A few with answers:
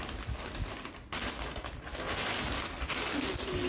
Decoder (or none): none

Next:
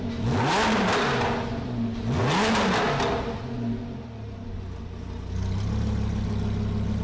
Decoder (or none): none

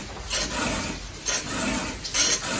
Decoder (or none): none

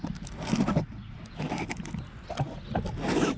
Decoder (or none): none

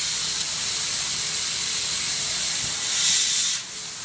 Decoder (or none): none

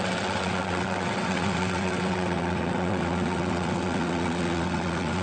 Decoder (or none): vocoder, WaveNeXt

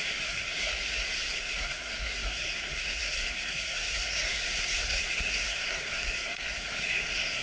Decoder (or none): codec, SNAC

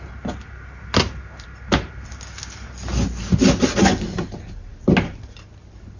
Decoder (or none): none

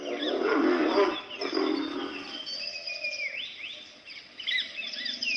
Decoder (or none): none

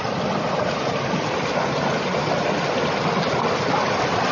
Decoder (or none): none